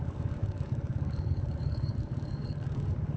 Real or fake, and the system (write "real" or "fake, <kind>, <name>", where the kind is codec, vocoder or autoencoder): fake, codec, DAC